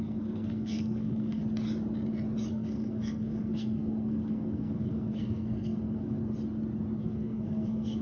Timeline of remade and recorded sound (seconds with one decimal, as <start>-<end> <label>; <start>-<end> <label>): 0.0-1.4 remade; 1.4-2.5 recorded; 2.5-6.2 remade; 6.2-7.0 recorded; 7.0-8.0 remade

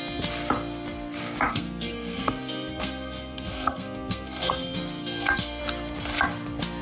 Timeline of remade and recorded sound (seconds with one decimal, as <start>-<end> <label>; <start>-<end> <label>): 0.0-1.5 recorded; 1.5-5.6 remade; 5.6-6.8 recorded

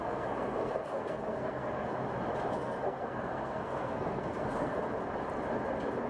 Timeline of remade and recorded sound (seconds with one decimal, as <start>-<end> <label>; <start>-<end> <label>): 0.0-1.9 remade; 1.9-2.5 recorded; 2.5-4.8 remade; 4.8-6.1 recorded

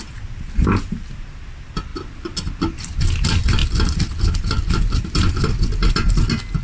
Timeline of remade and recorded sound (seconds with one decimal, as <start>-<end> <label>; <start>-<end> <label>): 0.0-6.6 recorded

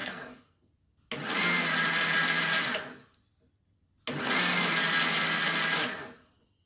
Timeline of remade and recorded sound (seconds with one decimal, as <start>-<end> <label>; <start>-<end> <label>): 0.0-0.7 remade; 0.7-6.7 recorded

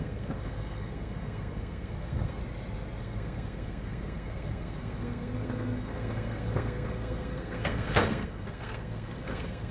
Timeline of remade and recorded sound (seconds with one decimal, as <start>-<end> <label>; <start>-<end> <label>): 0.0-2.4 remade; 2.4-3.0 recorded; 3.0-9.7 remade

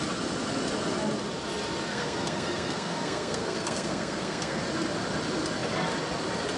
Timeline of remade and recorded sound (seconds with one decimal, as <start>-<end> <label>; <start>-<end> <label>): 0.0-1.9 recorded; 1.9-4.6 remade; 4.6-6.6 recorded